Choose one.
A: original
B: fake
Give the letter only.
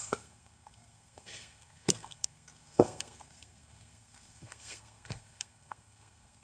B